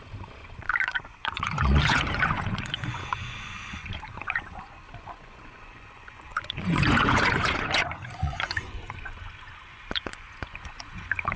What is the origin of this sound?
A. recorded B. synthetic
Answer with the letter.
B